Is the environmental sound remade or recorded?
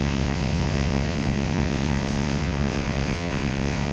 remade